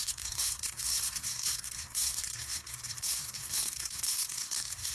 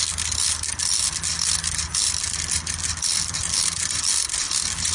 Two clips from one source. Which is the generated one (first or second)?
first